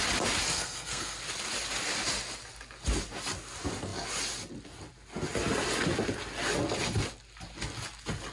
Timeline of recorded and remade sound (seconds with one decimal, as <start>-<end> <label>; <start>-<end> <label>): 0.0-0.5 recorded; 0.5-1.2 remade; 1.2-8.3 recorded